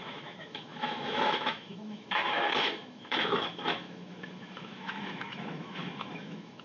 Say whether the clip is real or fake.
fake